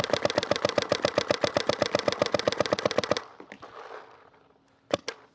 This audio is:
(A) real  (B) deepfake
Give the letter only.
A